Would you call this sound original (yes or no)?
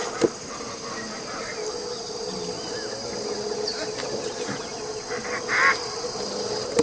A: yes